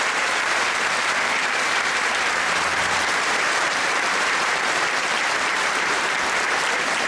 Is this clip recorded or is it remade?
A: remade